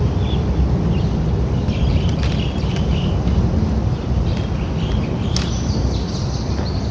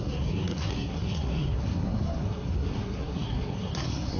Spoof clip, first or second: second